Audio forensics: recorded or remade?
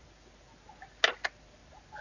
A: recorded